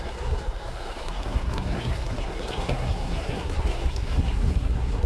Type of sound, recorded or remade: remade